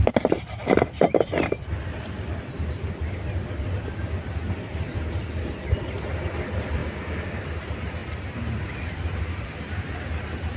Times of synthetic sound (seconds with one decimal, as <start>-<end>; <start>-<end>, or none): 6.8-7.4